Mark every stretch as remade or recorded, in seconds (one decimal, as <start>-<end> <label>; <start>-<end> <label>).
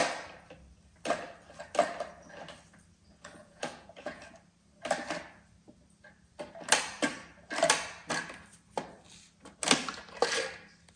0.0-3.4 recorded; 3.4-4.2 remade; 4.2-11.0 recorded